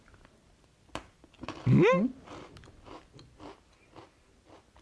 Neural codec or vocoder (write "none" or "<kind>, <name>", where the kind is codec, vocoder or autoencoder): none